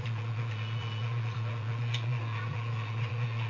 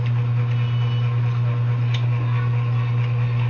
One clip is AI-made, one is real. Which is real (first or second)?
second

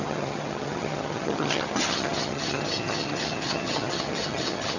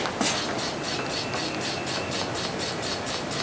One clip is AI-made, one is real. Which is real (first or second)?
second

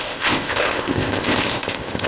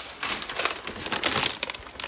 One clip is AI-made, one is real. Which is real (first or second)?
second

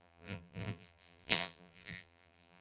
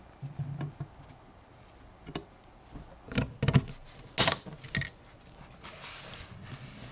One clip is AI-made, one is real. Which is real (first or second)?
second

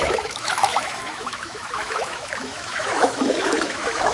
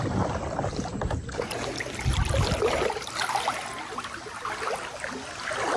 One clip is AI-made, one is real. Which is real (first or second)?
second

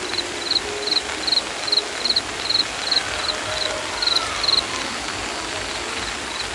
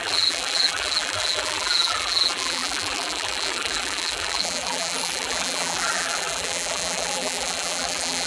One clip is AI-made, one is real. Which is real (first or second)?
first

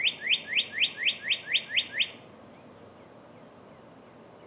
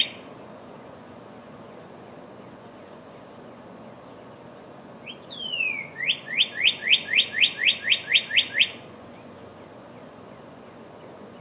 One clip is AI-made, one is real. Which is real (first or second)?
first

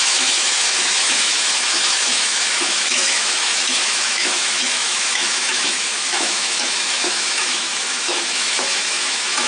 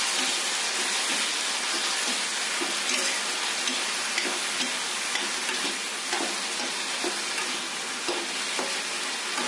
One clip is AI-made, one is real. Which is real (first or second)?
second